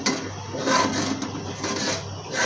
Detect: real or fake real